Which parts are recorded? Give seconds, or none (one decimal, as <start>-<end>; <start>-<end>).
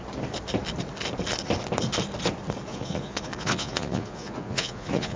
0.0-2.7